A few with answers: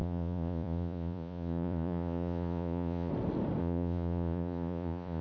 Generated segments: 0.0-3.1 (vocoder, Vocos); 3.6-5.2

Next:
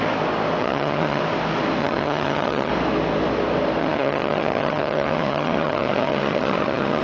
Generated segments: 0.6-1.2 (vocoder, HiFi-GAN); 1.8-2.7; 3.8-7.0

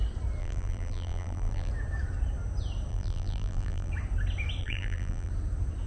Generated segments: 0.4-1.7 (vocoder, BigVGAN v2); 2.9-3.9; 4.6-5.3

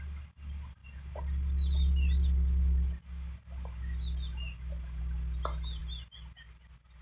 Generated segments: none

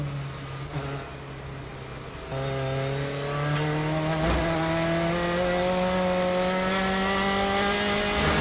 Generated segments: none

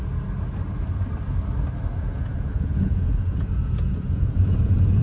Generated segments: 1.9-5.0 (vocoder, Vocos)